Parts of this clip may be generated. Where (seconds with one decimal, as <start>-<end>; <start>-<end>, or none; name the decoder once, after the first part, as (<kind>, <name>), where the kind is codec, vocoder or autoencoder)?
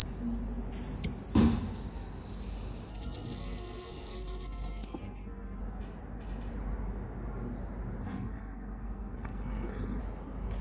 2.9-5.6 (codec, SNAC); 8.0-10.0